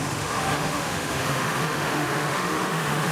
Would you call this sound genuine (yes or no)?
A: no